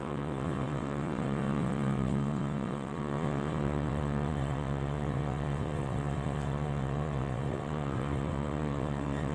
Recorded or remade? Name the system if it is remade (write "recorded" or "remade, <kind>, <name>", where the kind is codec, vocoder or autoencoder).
remade, vocoder, WaveNeXt